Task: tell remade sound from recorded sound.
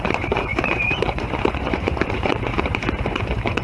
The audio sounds remade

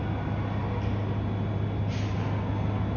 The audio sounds recorded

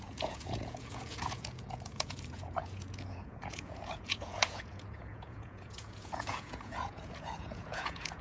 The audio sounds remade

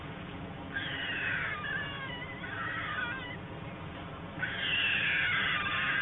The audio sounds recorded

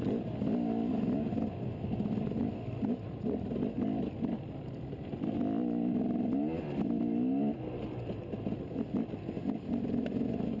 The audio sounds recorded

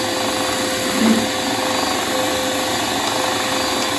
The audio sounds recorded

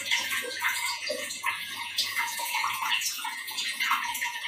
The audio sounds remade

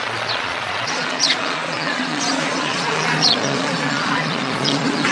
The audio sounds remade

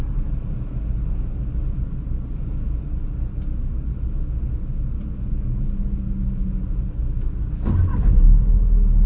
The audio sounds recorded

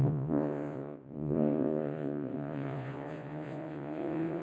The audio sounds remade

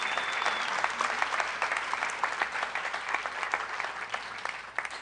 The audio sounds recorded